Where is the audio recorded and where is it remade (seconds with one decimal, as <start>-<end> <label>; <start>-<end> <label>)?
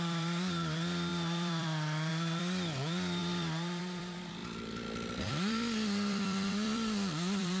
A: 0.0-7.6 remade